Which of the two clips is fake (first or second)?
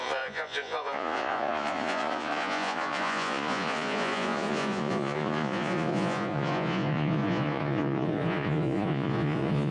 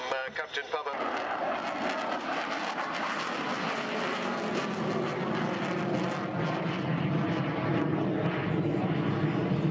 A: first